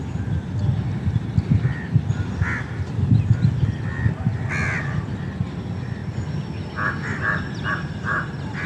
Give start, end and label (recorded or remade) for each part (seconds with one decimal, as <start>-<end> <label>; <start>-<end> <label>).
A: 0.0-8.7 recorded